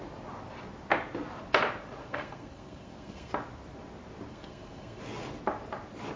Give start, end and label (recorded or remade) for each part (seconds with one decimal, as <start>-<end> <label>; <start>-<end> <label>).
0.0-2.0 recorded; 2.0-3.3 remade; 3.3-4.3 recorded; 4.3-5.0 remade; 5.0-6.2 recorded